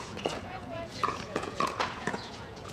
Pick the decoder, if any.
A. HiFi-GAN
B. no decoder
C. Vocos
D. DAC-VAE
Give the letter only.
C